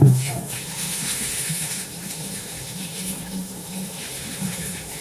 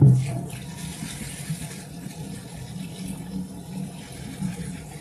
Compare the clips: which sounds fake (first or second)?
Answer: first